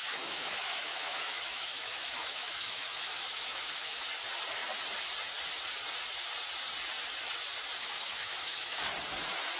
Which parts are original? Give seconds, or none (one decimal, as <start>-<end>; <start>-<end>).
4.0-7.8; 8.8-9.6